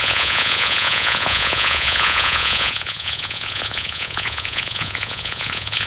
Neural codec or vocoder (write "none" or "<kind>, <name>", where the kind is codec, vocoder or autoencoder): vocoder, Vocos